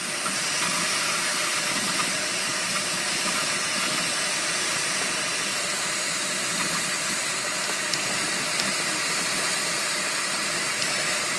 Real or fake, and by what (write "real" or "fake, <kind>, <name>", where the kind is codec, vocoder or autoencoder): real